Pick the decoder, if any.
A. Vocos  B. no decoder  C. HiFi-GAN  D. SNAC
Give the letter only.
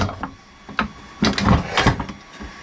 B